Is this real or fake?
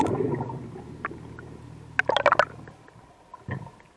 real